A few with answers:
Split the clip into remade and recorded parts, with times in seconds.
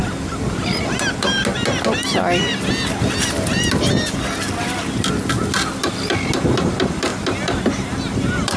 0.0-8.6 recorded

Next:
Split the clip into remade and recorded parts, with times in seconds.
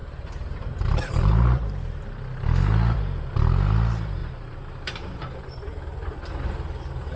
0.0-1.9 remade; 1.9-4.2 recorded; 4.2-6.3 remade; 6.3-7.2 recorded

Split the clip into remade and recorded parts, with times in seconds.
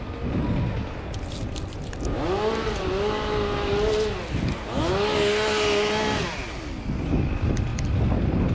0.0-8.5 recorded